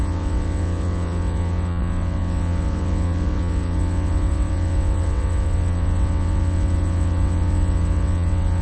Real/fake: fake